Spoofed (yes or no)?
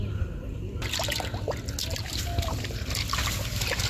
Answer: no